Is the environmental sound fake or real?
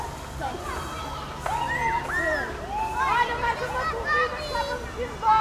real